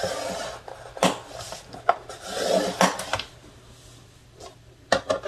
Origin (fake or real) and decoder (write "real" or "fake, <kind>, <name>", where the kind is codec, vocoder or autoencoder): real